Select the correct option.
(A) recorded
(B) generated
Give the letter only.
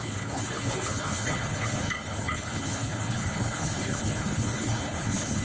B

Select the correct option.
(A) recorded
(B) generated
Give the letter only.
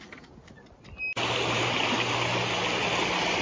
A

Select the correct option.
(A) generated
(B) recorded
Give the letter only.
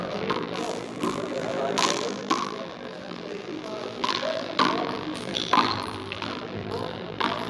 A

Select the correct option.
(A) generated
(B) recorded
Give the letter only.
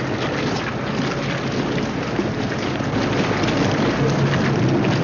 B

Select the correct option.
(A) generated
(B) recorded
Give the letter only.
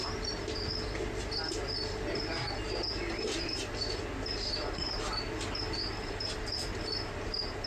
B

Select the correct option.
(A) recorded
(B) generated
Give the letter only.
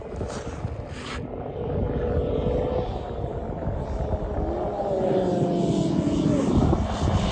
A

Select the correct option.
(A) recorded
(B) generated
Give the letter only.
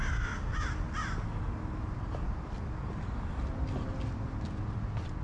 A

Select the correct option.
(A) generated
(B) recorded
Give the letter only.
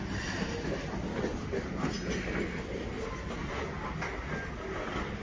B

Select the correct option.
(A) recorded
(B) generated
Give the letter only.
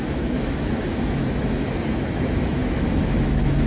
B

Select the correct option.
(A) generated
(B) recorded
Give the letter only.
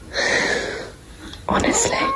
B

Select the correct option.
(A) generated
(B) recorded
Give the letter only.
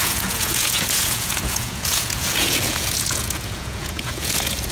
A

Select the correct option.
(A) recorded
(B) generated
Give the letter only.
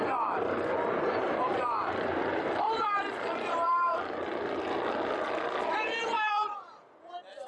A